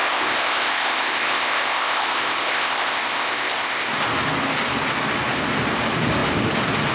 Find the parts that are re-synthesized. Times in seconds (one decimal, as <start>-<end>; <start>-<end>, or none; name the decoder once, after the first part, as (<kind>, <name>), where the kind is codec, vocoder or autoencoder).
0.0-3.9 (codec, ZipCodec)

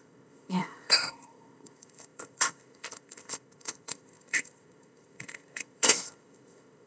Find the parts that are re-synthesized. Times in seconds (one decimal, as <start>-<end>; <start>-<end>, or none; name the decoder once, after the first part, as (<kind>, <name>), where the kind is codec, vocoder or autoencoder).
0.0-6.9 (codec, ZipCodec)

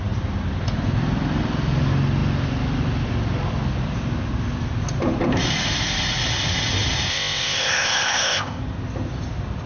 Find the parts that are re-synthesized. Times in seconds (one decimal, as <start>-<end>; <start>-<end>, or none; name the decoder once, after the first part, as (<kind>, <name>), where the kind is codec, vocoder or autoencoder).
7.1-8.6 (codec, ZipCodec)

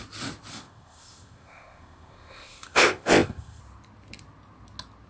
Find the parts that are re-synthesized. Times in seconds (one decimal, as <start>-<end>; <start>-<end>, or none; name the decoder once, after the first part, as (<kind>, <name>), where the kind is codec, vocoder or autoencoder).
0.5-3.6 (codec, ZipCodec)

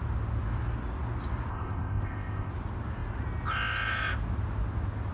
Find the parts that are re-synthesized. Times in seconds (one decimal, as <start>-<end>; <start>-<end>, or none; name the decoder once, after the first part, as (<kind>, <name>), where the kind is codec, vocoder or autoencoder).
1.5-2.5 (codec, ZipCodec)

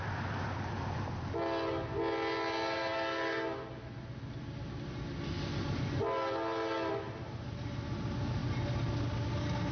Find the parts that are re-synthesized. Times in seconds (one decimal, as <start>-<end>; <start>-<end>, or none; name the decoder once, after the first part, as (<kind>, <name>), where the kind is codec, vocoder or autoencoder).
none